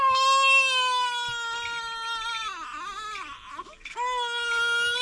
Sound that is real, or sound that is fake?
real